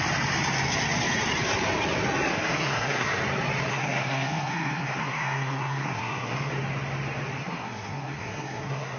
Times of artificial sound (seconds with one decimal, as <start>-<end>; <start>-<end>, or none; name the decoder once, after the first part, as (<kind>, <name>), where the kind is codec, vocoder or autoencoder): 2.3-3.2 (codec, SNAC); 3.7-6.5; 7.4-9.0